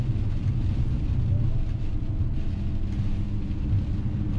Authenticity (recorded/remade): recorded